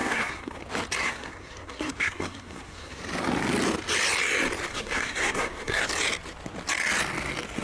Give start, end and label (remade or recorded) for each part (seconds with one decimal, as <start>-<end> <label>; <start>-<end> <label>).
0.0-0.6 remade; 0.6-1.0 recorded; 1.0-3.0 remade; 3.0-4.7 recorded; 4.7-5.8 remade; 5.8-7.6 recorded